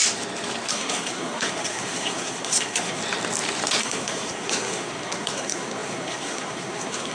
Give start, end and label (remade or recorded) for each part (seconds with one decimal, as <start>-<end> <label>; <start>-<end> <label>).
0.0-0.7 recorded; 0.7-3.0 remade; 3.0-3.8 recorded; 3.8-7.1 remade